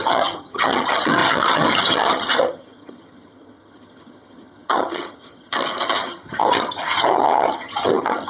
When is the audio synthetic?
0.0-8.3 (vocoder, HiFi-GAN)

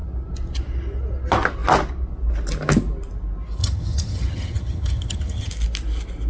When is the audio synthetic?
3.6-5.5 (vocoder, HiFi-GAN)

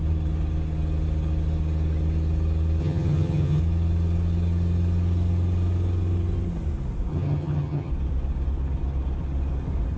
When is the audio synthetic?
2.8-3.6 (vocoder, HiFi-GAN); 7.1-7.9

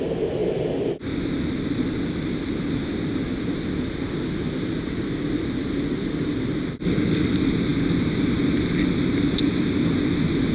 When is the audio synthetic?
none

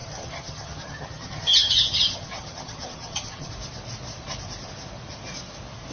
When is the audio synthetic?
0.0-3.5 (vocoder, HiFi-GAN)